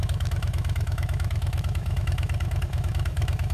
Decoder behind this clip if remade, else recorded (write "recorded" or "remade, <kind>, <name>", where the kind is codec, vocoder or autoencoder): remade, autoencoder, DAC-VAE